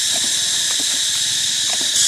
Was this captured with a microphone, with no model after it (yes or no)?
yes